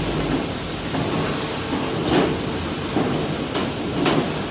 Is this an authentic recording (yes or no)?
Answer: yes